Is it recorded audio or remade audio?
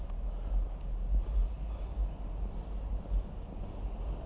recorded